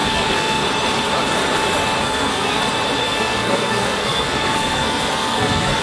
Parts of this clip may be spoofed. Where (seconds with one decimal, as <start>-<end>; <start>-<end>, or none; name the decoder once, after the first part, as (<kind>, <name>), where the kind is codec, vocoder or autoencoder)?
0.0-0.6 (codec, SNAC); 2.0-2.6; 3.0-5.8